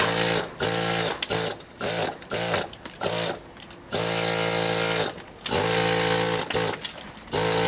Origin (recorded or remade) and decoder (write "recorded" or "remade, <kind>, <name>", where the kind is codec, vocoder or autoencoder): recorded